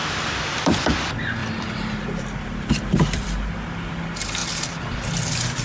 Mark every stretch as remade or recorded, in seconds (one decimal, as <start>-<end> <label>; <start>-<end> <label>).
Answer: 0.0-0.8 remade; 0.8-1.4 recorded; 1.4-3.4 remade; 3.4-4.4 recorded; 4.4-5.1 remade; 5.1-5.6 recorded